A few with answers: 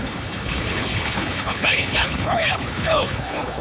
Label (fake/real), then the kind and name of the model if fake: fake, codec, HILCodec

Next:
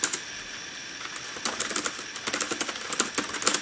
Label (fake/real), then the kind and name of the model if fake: real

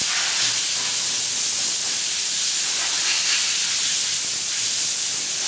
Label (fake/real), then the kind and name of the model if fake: real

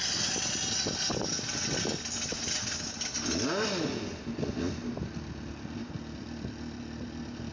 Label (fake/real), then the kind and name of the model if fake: real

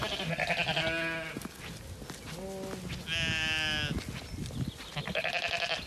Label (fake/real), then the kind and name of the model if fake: real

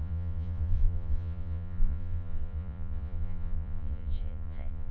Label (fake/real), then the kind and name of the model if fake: fake, vocoder, Vocos